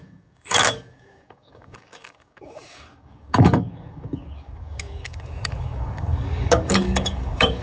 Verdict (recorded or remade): remade